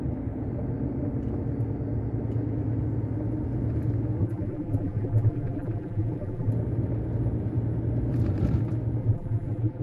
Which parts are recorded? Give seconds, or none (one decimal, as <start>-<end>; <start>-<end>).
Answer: 0.0-4.2; 6.5-9.0